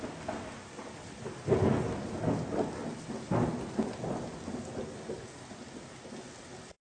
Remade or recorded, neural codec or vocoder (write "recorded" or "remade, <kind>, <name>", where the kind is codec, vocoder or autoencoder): recorded